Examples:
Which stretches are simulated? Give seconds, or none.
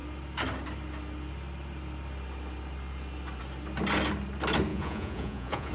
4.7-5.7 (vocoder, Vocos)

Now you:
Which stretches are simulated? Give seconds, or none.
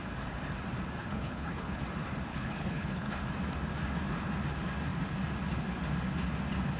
1.0-1.8 (codec, HILCodec); 2.3-3.2